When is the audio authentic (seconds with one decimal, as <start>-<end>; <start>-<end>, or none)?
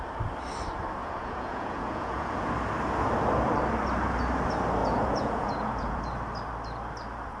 0.0-1.0; 2.5-4.8; 6.0-7.4